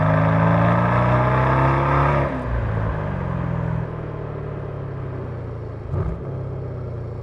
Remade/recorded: recorded